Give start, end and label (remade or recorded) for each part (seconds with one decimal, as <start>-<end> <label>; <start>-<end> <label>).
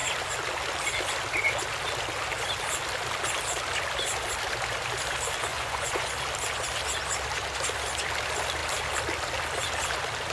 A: 0.0-5.5 recorded; 5.5-6.1 remade; 6.1-10.3 recorded